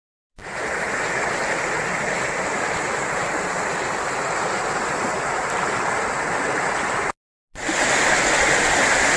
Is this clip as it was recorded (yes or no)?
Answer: yes